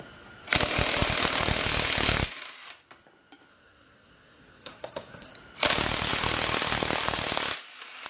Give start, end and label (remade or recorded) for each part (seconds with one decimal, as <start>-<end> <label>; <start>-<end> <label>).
0.0-3.5 recorded; 3.5-5.3 remade; 5.3-8.1 recorded